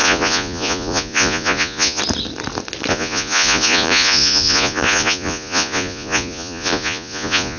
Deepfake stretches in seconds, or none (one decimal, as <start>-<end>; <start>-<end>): 0.0-2.0; 2.9-7.6